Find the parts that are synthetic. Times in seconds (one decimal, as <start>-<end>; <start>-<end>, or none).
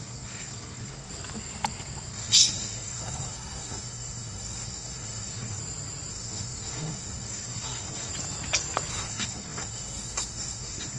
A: 0.0-1.1; 2.1-5.6; 6.1-8.1; 8.9-11.0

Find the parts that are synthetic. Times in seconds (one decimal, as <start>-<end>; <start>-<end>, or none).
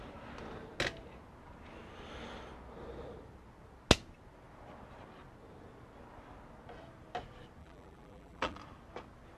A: 7.6-8.6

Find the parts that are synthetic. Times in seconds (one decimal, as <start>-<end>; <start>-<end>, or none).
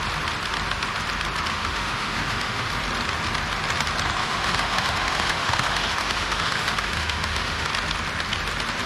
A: 1.5-2.7; 4.2-7.7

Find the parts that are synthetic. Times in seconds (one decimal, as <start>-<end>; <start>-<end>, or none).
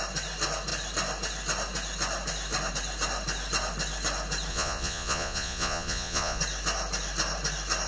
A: 4.5-6.4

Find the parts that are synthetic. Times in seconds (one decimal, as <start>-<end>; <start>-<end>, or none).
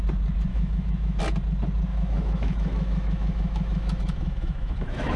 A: 0.5-1.2; 1.9-5.2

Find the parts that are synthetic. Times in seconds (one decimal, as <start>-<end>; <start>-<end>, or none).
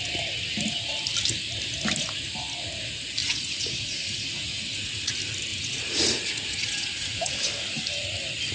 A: 3.2-5.1; 5.5-7.8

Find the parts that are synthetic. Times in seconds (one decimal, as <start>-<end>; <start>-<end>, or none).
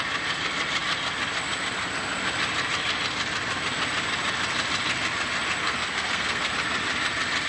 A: 5.6-6.5